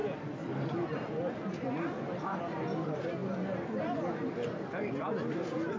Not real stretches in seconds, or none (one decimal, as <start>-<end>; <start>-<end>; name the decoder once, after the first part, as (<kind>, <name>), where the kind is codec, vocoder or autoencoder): none